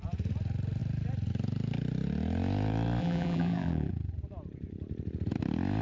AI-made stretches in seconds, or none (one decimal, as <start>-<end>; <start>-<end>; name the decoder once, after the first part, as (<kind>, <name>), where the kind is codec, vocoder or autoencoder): 3.0-3.9 (vocoder, BigVGAN v2)